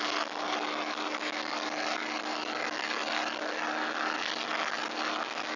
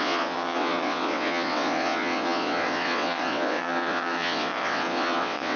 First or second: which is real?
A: first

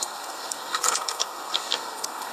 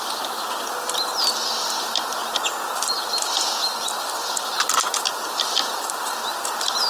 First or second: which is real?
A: second